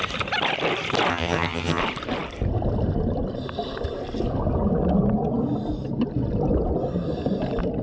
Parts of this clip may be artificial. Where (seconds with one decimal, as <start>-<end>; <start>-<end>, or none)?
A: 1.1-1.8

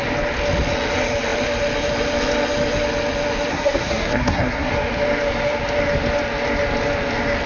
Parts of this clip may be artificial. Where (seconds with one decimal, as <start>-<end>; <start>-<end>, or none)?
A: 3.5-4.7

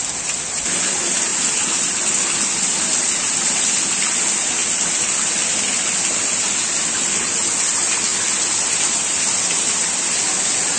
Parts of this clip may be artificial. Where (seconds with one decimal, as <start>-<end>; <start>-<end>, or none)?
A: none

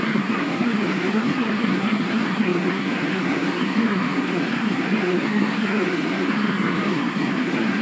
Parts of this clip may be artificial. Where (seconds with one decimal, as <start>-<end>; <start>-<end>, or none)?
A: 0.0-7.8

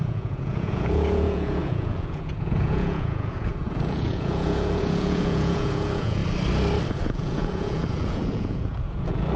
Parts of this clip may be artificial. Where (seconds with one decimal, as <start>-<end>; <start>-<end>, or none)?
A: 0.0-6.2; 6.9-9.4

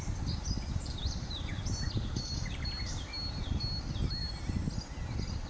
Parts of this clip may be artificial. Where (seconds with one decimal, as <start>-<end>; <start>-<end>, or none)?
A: none

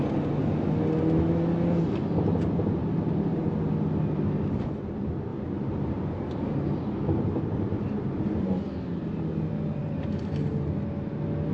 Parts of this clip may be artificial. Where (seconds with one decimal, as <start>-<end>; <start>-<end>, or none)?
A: 5.3-8.6; 9.8-10.5

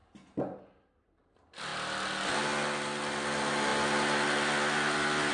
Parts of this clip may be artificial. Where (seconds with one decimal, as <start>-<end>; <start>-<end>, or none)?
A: none